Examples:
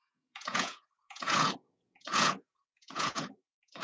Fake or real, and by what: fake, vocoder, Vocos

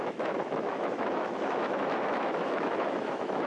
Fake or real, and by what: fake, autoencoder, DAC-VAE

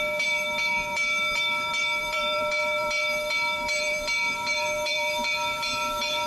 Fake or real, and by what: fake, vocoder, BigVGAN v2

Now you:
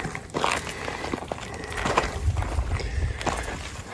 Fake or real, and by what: real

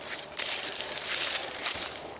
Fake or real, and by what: fake, vocoder, BigVGAN v2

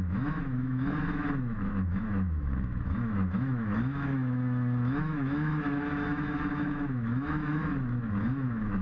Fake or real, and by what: fake, autoencoder, DAC-VAE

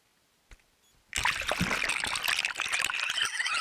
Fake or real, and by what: real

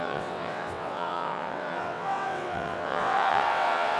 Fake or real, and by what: fake, vocoder, WaveNeXt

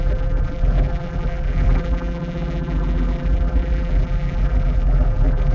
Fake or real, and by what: fake, vocoder, BigVGAN v2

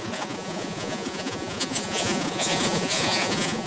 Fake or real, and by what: fake, vocoder, Vocos